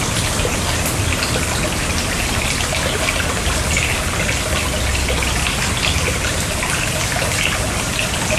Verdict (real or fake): real